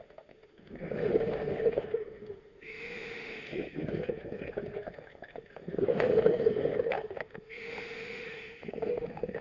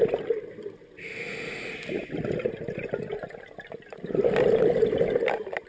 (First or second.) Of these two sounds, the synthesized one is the first